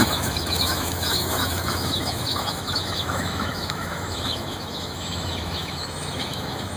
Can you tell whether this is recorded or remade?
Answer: remade